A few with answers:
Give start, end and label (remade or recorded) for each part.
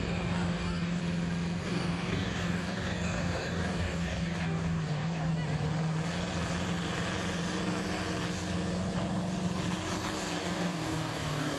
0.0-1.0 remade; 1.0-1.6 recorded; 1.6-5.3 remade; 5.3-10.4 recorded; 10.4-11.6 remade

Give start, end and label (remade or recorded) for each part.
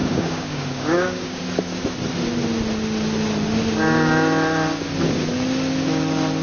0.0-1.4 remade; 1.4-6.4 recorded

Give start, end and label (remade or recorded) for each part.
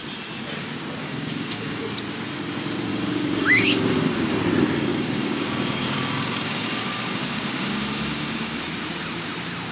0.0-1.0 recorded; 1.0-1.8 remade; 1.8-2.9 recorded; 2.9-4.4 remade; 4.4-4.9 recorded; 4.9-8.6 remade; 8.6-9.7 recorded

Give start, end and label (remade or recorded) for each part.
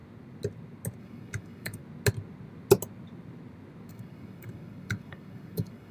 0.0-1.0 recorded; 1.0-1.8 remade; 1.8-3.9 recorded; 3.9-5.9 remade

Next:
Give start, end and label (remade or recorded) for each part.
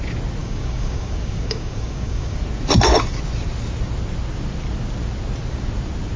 0.0-0.4 recorded; 0.4-2.4 remade; 2.4-6.2 recorded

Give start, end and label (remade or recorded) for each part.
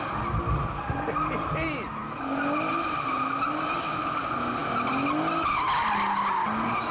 0.0-6.9 recorded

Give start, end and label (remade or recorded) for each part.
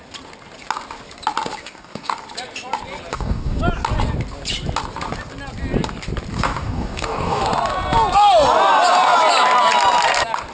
0.0-1.6 recorded; 1.6-2.1 remade; 2.1-3.1 recorded; 3.1-3.6 remade; 3.6-6.3 recorded; 6.3-7.4 remade; 7.4-10.5 recorded